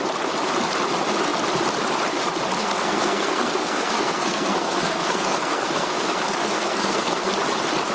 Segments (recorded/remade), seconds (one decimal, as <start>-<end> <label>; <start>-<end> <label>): 0.0-2.6 recorded; 2.6-7.3 remade; 7.3-7.9 recorded